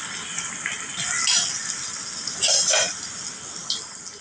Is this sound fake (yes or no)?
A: no